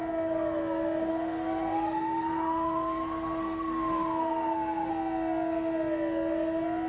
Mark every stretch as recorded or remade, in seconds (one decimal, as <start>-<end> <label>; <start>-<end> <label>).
0.0-1.1 recorded; 1.1-4.9 remade; 4.9-6.9 recorded

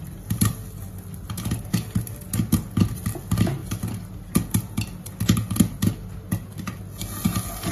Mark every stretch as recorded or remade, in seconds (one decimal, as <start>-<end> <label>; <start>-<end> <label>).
0.0-7.7 recorded